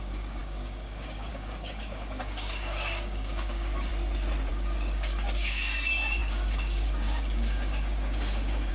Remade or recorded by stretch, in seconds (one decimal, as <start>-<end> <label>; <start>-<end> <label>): 0.0-3.9 remade; 3.9-4.5 recorded; 4.5-8.7 remade